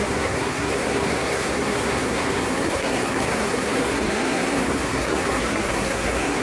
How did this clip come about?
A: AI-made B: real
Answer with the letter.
A